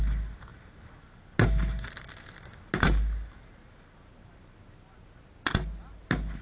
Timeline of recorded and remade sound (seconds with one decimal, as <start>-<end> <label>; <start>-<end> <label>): 0.0-6.4 recorded